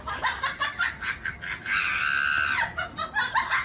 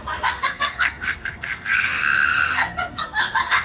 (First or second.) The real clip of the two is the first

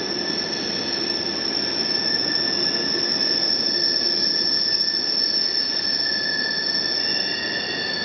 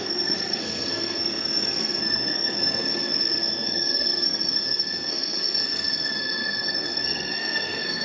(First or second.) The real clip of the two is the first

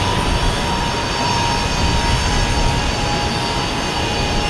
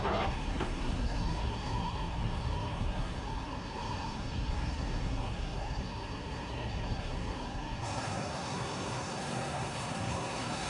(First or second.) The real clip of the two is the first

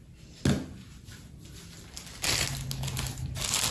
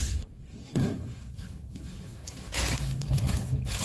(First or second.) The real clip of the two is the first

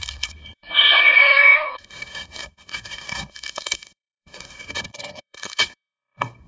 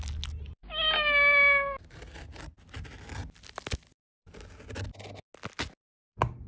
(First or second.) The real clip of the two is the second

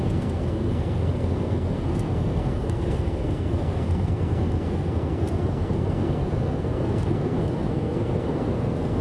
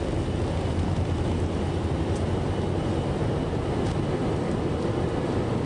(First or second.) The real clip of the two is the second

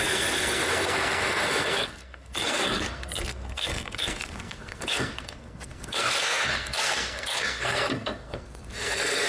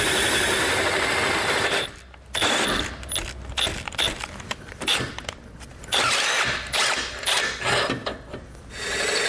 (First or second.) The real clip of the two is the second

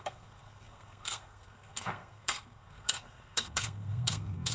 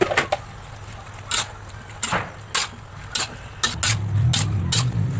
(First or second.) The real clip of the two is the second